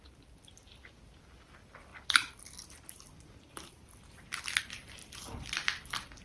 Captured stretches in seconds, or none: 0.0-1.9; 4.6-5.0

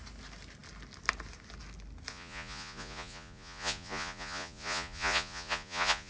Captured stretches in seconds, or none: 0.0-2.1

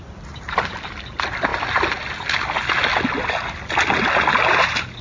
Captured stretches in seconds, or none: 0.0-5.0

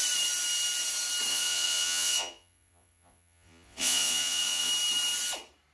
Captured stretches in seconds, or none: 0.0-1.3; 4.7-5.7

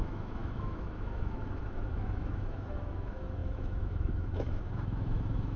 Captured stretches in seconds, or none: none

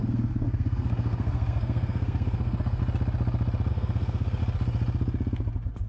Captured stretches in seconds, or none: 2.8-3.7; 4.4-5.9

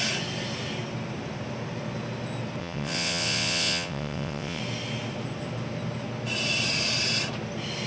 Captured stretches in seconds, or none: 0.0-2.6; 4.6-7.9

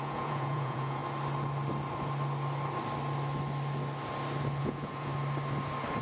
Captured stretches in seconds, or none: 1.0-4.6; 5.1-6.0